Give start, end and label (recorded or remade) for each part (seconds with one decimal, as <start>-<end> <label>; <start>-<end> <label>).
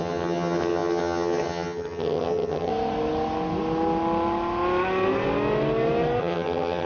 0.0-2.7 remade; 2.7-6.2 recorded; 6.2-6.9 remade